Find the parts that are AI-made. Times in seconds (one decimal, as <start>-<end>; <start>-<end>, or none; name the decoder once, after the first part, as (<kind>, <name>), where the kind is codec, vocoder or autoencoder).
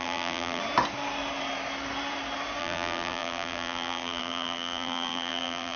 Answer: 0.0-0.6 (vocoder, BigVGAN v2); 2.6-5.8